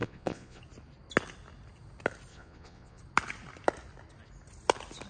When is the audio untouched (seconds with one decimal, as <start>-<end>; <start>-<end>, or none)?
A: 0.6-2.3; 3.0-5.1